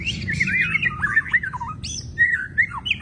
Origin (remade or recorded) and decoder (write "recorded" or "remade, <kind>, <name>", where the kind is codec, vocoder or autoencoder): recorded